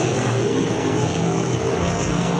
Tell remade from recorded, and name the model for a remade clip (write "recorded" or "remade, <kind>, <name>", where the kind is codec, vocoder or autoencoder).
remade, codec, SNAC